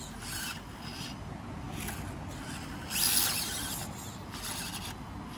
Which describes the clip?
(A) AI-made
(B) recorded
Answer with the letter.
B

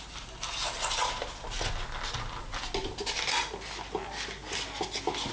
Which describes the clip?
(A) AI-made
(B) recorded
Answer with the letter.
B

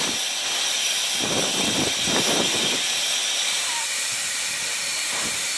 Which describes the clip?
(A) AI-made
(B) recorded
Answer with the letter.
A